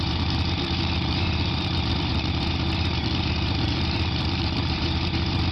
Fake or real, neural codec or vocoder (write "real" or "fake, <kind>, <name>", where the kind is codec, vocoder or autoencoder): fake, vocoder, BigVGAN v2